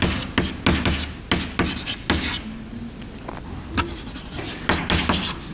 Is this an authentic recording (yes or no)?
yes